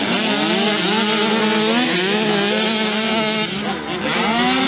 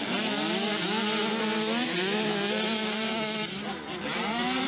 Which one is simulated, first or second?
second